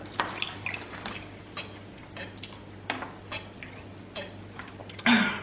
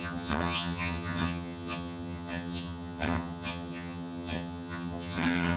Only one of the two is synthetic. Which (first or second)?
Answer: second